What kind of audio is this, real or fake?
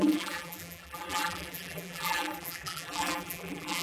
fake